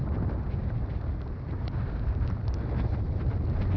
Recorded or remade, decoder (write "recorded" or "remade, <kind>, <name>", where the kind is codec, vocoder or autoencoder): recorded